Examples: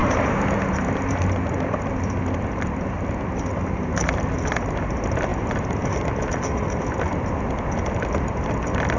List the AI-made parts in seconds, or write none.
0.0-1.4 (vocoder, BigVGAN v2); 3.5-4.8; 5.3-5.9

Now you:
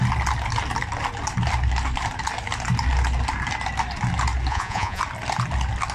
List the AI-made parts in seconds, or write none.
4.5-5.0 (vocoder, Vocos)

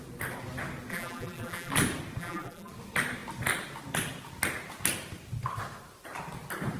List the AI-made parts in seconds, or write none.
0.9-1.7 (vocoder, BigVGAN v2); 2.2-2.7

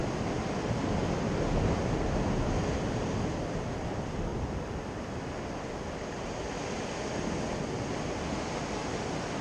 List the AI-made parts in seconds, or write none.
4.3-6.6 (vocoder, BigVGAN v2)

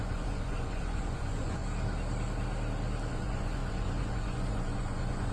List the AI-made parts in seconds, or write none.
0.0-1.6 (vocoder, Vocos); 3.1-5.3

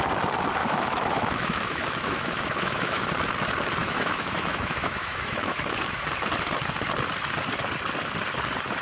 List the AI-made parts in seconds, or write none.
0.6-3.1 (autoencoder, DAC-VAE); 3.8-5.6

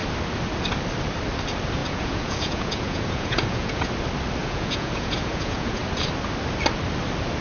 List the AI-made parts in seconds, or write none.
1.8-3.9 (vocoder, Vocos); 4.4-5.8

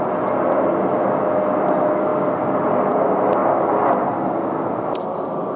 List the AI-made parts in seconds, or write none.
none